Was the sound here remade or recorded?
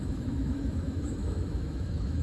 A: remade